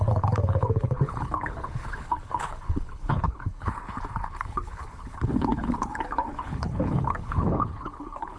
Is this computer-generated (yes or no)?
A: yes